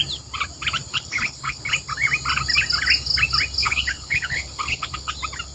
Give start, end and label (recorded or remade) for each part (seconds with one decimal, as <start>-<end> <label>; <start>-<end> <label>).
0.0-0.9 recorded; 0.9-1.7 remade; 1.7-3.6 recorded; 3.6-5.1 remade; 5.1-5.5 recorded